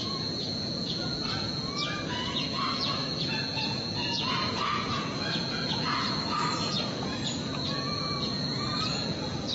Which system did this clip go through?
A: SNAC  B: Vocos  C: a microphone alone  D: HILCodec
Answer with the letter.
B